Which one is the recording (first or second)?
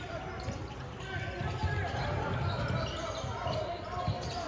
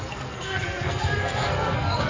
first